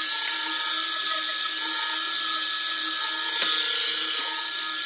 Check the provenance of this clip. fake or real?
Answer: real